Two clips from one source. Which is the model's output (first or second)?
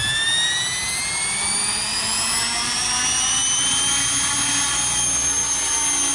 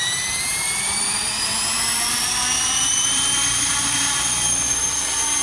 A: second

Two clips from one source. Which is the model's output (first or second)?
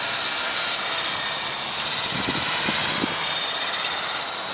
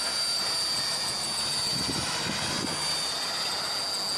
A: first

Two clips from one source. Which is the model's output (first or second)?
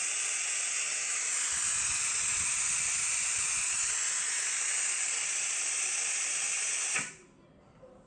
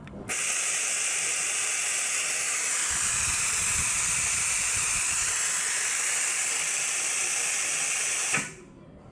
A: second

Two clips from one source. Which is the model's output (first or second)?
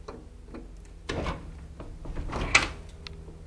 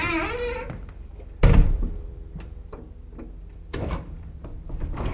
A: second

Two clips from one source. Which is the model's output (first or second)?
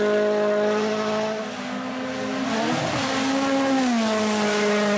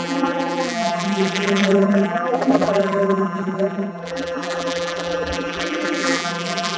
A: second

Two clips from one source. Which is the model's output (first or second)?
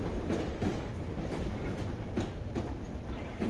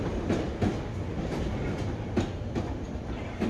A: first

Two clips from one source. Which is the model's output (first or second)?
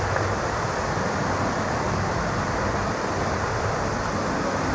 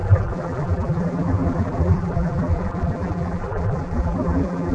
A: second